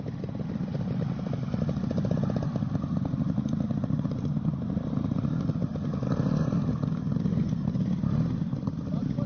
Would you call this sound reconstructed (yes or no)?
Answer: no